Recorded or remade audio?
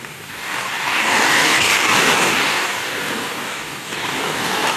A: remade